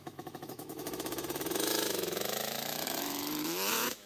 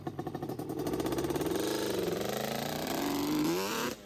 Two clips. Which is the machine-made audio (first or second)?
first